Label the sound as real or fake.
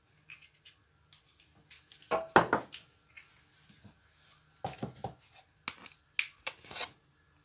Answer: real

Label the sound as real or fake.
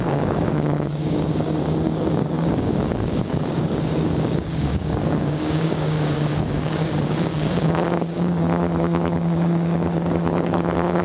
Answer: fake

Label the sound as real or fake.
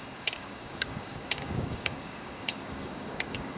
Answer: fake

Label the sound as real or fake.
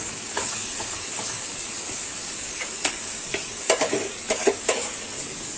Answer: fake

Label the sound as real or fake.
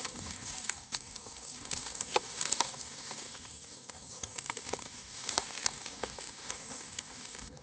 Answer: fake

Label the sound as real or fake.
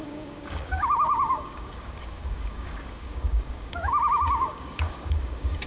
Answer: fake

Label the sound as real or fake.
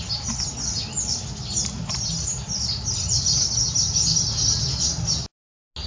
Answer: real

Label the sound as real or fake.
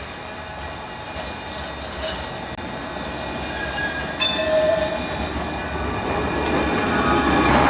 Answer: real